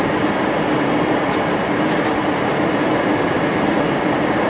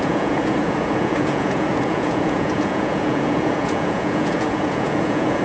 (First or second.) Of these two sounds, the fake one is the second